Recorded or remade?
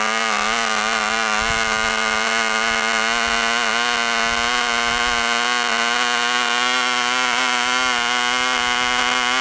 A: recorded